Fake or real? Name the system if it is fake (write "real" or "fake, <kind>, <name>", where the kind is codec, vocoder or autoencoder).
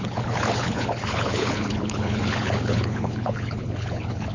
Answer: fake, codec, HILCodec